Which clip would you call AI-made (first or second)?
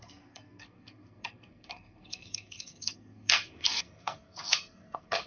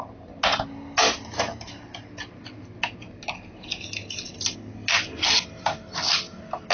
first